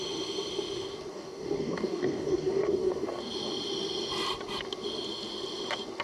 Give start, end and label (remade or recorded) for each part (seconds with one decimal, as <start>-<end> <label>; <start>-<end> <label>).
0.0-1.1 recorded; 1.1-3.2 remade; 3.2-6.0 recorded